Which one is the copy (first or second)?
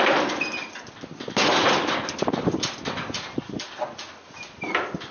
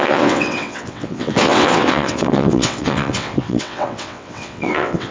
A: second